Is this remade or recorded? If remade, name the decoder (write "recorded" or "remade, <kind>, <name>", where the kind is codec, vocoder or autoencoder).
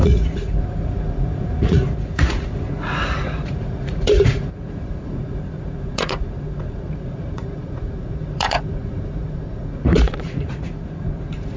remade, vocoder, Vocos